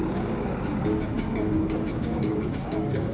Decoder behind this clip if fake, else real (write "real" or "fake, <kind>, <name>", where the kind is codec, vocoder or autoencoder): fake, codec, DAC